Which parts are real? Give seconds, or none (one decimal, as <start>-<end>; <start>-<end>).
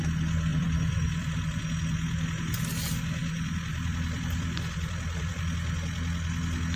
0.0-0.5; 1.6-3.2; 5.4-6.8